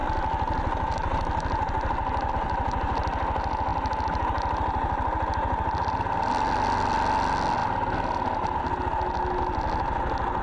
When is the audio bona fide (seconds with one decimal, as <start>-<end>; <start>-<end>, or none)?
0.0-10.4